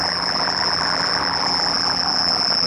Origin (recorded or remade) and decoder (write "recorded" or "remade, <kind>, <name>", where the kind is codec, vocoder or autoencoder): remade, vocoder, BigVGAN v2